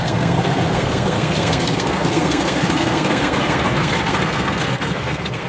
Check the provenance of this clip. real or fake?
fake